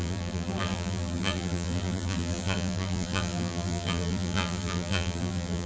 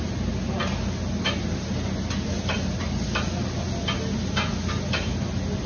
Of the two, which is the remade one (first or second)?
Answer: first